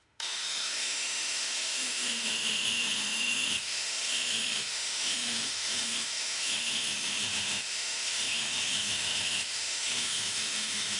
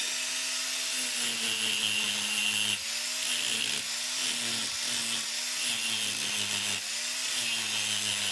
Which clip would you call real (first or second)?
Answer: second